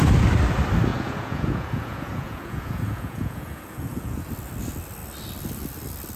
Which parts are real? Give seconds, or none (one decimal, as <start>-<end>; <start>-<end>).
0.0-0.9; 4.3-6.2